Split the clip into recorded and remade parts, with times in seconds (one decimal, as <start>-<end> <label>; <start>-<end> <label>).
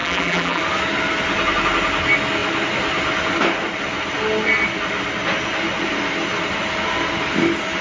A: 0.0-0.6 remade; 0.6-7.8 recorded